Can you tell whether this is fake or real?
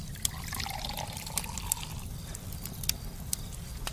real